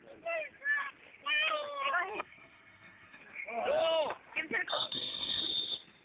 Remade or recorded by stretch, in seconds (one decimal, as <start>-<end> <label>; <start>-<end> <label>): 0.0-2.1 recorded; 2.1-3.2 remade; 3.2-4.7 recorded; 4.7-5.4 remade; 5.4-6.0 recorded